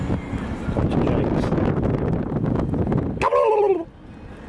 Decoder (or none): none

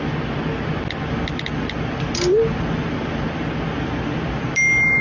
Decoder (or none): none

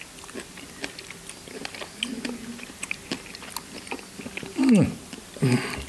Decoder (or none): none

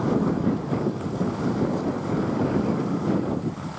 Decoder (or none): codec, DAC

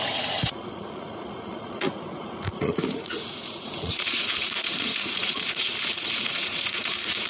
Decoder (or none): vocoder, Vocos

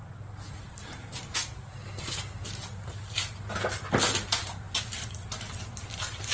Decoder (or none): none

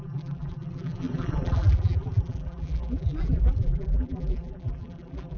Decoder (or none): vocoder, BigVGAN v2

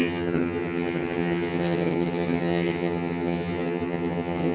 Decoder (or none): vocoder, HiFi-GAN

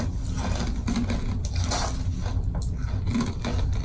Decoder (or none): none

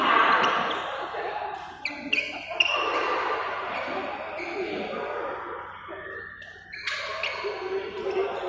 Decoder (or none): none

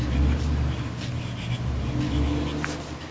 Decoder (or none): none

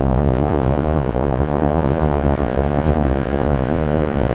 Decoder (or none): vocoder, Vocos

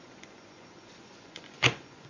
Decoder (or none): vocoder, Vocos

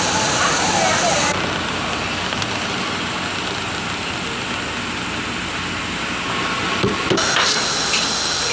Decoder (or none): none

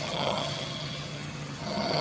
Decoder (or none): vocoder, HiFi-GAN